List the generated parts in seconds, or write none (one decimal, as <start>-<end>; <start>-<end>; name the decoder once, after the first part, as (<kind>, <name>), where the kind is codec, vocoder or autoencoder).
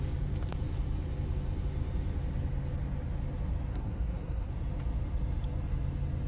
3.7-4.5 (codec, SNAC)